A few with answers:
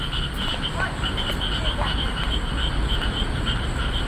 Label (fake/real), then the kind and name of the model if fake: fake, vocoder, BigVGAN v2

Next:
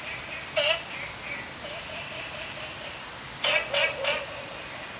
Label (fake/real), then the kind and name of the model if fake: real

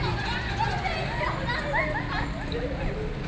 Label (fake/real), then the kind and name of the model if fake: real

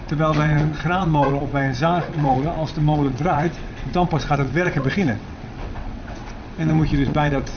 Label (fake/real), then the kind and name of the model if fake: fake, vocoder, WaveNeXt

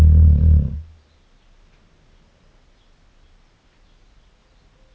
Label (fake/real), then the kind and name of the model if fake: real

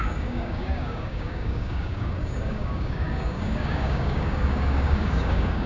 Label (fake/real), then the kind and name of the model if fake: fake, codec, DAC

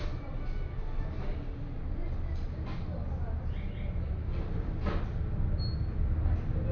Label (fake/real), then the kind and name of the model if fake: real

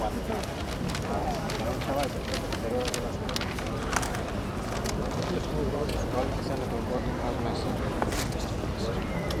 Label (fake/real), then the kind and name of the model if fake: real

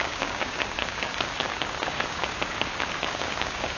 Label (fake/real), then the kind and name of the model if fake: fake, codec, DAC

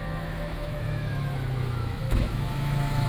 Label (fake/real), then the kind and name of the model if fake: fake, autoencoder, DAC-VAE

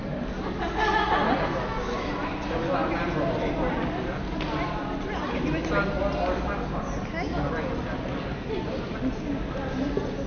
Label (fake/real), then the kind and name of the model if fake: real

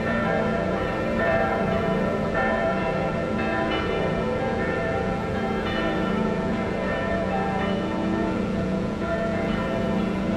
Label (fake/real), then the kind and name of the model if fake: fake, vocoder, Vocos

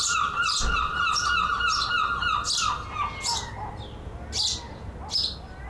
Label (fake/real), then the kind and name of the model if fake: real